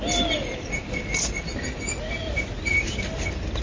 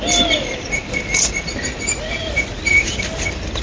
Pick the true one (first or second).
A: first